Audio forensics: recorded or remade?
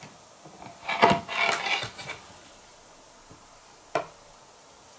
recorded